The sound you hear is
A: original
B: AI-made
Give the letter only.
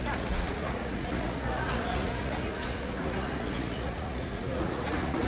B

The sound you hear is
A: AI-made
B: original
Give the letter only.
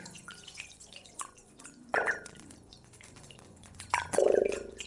A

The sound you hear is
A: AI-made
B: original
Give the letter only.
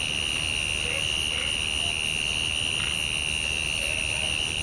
B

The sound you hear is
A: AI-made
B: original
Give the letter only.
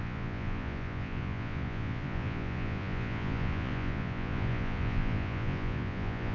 A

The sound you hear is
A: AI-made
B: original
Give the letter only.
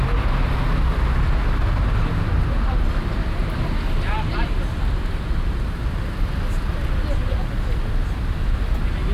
B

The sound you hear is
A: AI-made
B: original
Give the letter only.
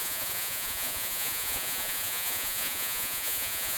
A